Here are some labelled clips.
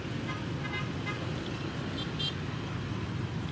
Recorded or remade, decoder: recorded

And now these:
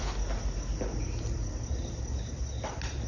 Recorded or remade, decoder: recorded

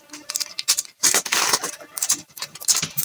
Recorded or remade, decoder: remade, vocoder, BigVGAN v2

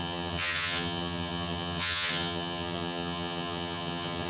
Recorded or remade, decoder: remade, vocoder, HiFi-GAN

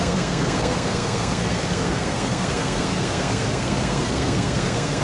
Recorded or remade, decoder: remade, codec, SNAC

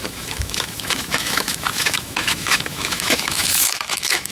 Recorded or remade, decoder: remade, autoencoder, DAC-VAE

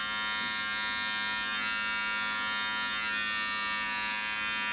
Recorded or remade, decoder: recorded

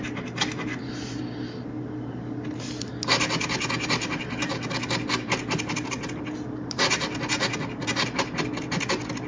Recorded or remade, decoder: recorded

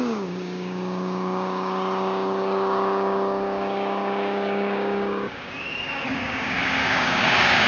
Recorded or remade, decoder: remade, codec, DAC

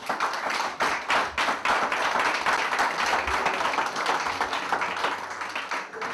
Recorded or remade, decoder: recorded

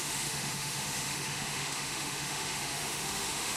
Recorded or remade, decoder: remade, autoencoder, DAC-VAE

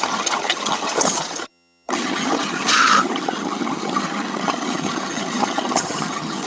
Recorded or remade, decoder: remade, vocoder, HiFi-GAN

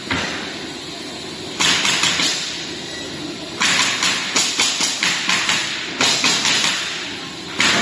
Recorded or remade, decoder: recorded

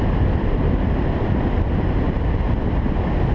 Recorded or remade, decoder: recorded